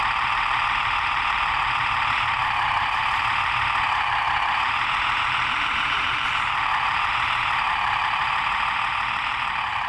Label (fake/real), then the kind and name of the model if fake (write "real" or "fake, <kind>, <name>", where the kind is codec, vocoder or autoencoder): fake, vocoder, BigVGAN v2